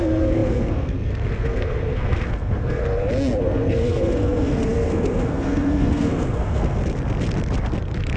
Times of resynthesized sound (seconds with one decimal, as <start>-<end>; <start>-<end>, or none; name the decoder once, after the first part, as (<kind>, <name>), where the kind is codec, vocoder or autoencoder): 0.0-2.8 (codec, SNAC); 3.4-6.8